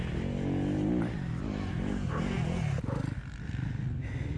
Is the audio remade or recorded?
recorded